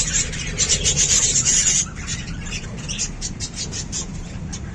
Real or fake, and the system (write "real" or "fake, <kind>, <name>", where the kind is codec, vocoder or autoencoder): fake, vocoder, BigVGAN v2